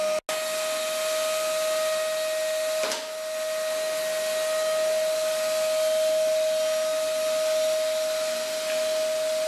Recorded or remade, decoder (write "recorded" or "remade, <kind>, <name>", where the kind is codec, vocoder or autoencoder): recorded